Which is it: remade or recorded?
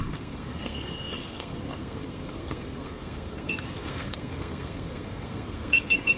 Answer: remade